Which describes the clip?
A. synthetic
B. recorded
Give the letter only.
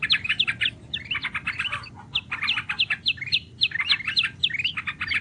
B